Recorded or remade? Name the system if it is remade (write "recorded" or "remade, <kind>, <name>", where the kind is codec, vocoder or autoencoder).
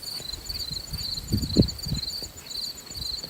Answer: recorded